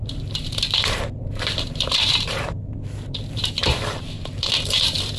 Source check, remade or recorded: remade